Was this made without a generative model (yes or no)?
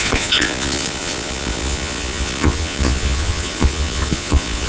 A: no